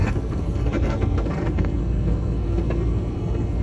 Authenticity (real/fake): fake